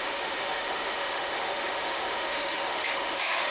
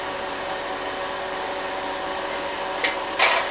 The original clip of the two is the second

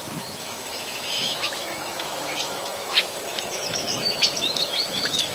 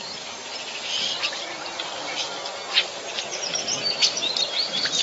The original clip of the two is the second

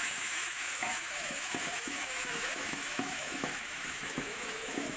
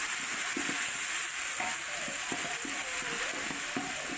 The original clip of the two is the second